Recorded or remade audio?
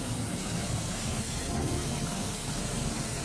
remade